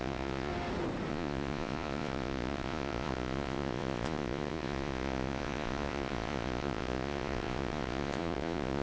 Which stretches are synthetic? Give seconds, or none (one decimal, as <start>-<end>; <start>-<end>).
0.0-0.5; 1.1-8.8